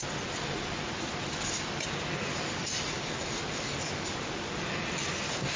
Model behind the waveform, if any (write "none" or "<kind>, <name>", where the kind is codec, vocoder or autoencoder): none